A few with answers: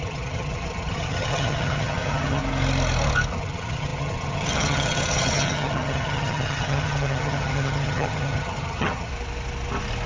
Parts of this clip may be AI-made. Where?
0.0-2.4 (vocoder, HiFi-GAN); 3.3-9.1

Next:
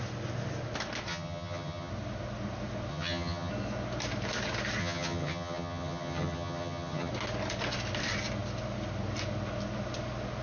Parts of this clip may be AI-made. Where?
1.1-1.9 (vocoder, HiFi-GAN); 2.9-3.5; 4.8-7.1

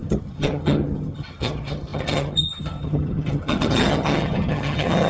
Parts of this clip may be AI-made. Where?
0.0-5.1 (vocoder, HiFi-GAN)

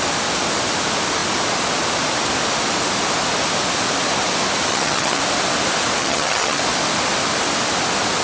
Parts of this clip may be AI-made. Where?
4.7-5.2 (vocoder, HiFi-GAN); 6.0-6.6